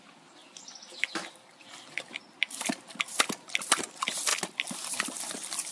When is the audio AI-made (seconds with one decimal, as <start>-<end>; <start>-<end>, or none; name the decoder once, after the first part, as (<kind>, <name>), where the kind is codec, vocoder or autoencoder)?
0.0-4.3 (vocoder, BigVGAN v2); 4.9-5.7